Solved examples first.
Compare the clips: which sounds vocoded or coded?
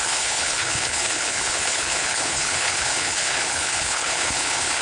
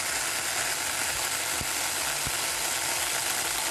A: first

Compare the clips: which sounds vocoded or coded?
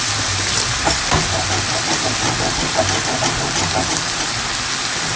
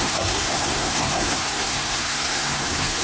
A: second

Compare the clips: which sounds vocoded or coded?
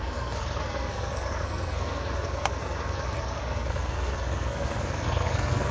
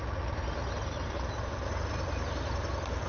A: first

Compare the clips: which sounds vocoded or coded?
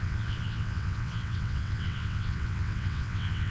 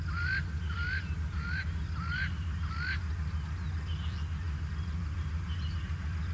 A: first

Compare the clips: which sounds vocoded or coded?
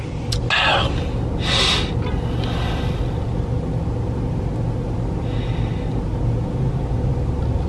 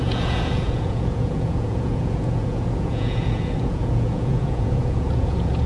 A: second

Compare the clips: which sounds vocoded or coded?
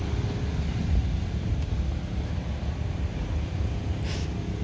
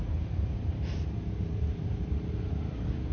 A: second